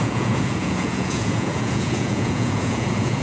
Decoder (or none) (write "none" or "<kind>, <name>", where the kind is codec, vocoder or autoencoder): vocoder, Vocos